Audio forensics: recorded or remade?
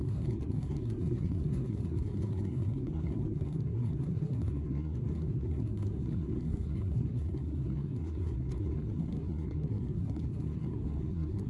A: remade